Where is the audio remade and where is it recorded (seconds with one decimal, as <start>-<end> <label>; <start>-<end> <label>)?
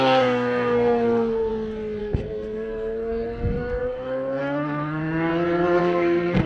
0.0-1.5 remade; 1.5-2.0 recorded; 2.0-5.3 remade; 5.3-5.8 recorded; 5.8-6.5 remade